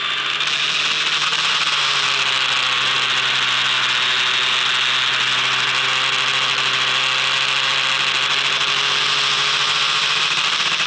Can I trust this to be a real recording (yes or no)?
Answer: yes